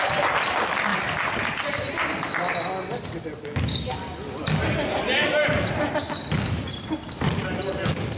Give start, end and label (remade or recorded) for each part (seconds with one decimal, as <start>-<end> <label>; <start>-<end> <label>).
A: 0.0-0.9 recorded; 0.9-2.1 remade; 2.1-5.4 recorded; 5.4-6.0 remade; 6.0-8.2 recorded